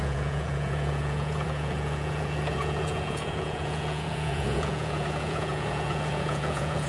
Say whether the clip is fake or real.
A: fake